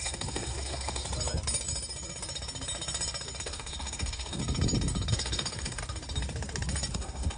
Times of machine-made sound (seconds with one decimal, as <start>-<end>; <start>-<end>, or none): 0.0-1.0; 3.4-4.4; 5.1-5.8; 6.9-7.4